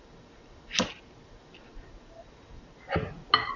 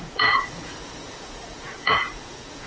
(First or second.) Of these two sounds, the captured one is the first